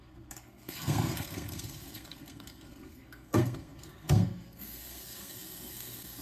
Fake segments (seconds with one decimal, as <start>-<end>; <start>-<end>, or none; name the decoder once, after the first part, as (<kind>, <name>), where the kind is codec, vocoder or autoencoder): 0.0-6.2 (codec, SNAC)